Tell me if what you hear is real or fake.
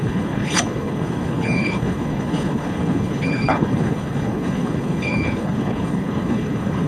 fake